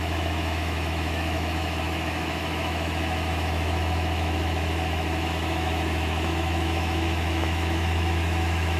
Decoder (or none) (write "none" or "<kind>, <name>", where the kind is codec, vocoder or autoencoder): autoencoder, DAC-VAE